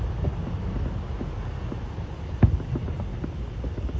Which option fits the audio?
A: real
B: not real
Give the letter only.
A